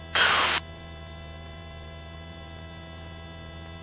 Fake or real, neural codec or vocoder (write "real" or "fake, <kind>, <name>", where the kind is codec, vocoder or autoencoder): fake, vocoder, BigVGAN v2